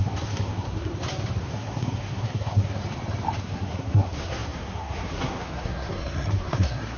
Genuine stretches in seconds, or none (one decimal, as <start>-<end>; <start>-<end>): 0.9-1.4; 2.8-3.4